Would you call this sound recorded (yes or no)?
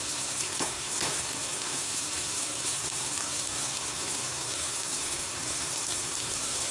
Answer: no